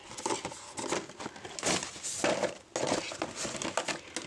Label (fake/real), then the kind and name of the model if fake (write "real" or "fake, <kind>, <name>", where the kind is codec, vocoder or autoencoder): real